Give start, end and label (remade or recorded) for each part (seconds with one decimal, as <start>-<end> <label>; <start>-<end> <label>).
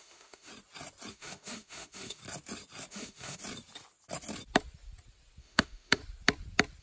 0.0-0.5 remade; 0.5-1.1 recorded; 1.1-2.2 remade; 2.2-2.9 recorded; 2.9-3.4 remade; 3.4-5.4 recorded; 5.4-6.0 remade; 6.0-6.8 recorded